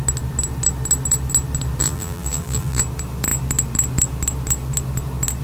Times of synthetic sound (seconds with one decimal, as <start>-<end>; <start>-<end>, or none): 1.8-2.8